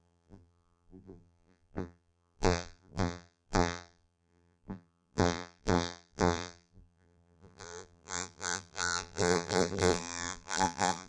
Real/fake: fake